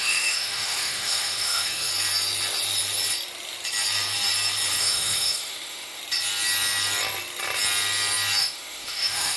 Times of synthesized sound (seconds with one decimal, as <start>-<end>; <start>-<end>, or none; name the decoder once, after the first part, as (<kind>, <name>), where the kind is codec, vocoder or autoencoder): 0.0-1.9 (autoencoder, DAC-VAE); 4.8-6.0; 8.4-9.4